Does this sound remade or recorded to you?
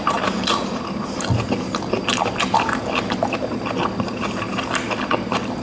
recorded